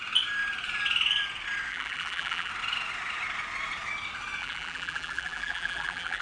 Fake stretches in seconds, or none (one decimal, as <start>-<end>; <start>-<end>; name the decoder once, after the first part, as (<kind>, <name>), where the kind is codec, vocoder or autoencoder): 1.7-2.5 (vocoder, BigVGAN v2); 4.4-6.2